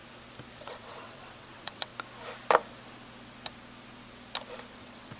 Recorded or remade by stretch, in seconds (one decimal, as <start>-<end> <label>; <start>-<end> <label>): 0.0-0.6 recorded; 0.6-1.9 remade; 1.9-4.7 recorded; 4.7-5.2 remade